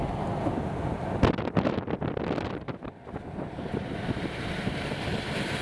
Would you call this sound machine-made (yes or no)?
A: no